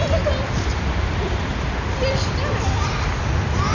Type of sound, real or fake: real